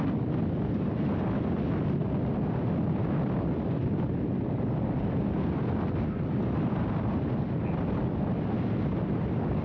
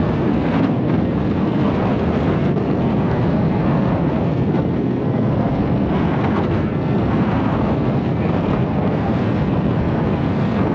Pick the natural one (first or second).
first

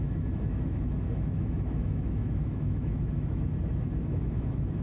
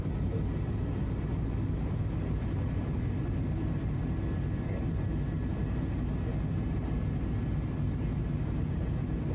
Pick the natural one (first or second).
second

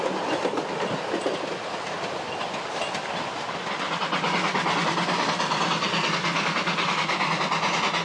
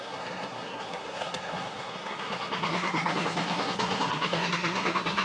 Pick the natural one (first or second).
first